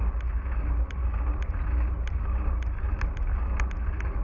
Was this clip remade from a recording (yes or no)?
no